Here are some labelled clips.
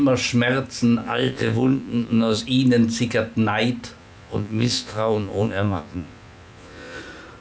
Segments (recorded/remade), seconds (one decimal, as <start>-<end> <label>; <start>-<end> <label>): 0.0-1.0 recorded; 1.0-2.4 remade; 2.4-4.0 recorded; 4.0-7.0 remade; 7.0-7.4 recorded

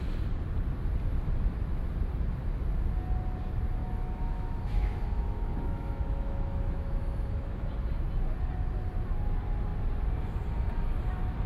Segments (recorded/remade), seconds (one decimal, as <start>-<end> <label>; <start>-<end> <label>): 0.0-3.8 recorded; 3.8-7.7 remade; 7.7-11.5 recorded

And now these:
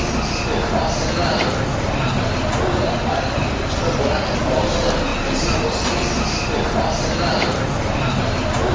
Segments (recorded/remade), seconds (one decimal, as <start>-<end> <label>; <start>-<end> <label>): 0.0-8.7 recorded

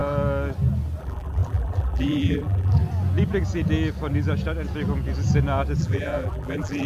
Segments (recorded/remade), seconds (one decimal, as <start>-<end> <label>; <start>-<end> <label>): 0.0-1.0 recorded; 1.0-2.8 remade; 2.8-5.8 recorded; 5.8-6.9 remade

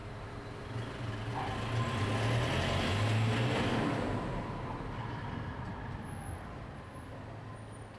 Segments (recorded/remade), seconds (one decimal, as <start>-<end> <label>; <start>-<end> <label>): 0.0-8.0 recorded

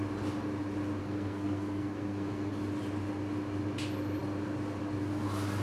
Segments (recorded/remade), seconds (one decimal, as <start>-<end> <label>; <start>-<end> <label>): 0.0-1.0 recorded; 1.0-2.5 remade; 2.5-5.6 recorded

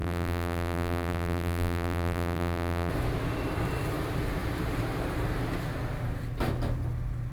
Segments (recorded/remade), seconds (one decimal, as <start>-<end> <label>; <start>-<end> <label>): 0.0-2.9 remade; 2.9-7.3 recorded

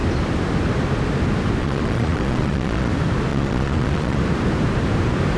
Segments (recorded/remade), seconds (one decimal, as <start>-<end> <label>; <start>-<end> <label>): 0.0-1.6 recorded; 1.6-2.9 remade; 2.9-3.3 recorded; 3.3-4.2 remade; 4.2-5.4 recorded